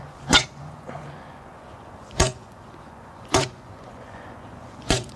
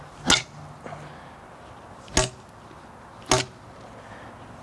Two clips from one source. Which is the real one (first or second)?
second